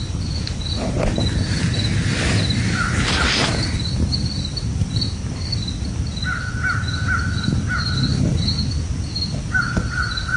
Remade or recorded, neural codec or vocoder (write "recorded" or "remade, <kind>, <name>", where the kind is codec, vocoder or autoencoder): recorded